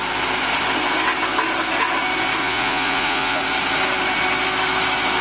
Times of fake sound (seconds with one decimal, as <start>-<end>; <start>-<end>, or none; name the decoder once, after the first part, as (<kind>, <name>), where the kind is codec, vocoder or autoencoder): 2.4-3.4 (vocoder, Vocos)